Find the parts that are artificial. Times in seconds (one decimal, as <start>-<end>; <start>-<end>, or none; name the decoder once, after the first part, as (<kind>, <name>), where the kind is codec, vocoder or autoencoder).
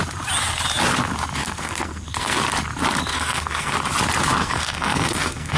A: 1.4-2.4 (codec, SNAC); 3.1-3.7; 4.4-5.6